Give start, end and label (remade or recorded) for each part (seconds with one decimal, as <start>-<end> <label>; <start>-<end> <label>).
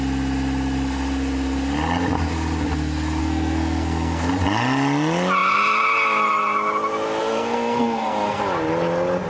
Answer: 0.0-3.2 recorded; 3.2-4.3 remade; 4.3-7.2 recorded; 7.2-8.4 remade; 8.4-9.3 recorded